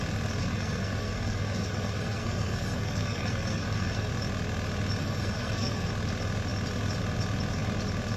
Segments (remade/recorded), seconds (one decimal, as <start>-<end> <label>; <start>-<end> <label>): 0.0-0.4 recorded; 0.4-4.1 remade; 4.1-5.0 recorded; 5.0-5.9 remade; 5.9-8.2 recorded